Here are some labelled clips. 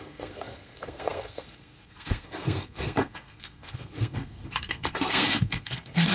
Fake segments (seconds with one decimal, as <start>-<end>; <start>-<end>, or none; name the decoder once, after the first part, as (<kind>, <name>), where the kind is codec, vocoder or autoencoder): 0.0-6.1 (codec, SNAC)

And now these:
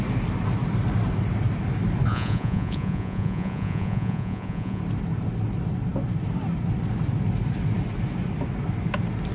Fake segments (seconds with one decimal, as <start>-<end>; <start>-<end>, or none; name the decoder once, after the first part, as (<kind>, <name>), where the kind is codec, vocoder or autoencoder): 2.1-4.8 (vocoder, Vocos)

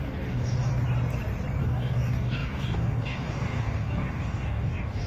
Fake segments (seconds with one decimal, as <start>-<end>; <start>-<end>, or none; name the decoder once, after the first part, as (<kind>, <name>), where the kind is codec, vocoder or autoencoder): 0.0-0.7 (codec, DAC); 1.6-5.1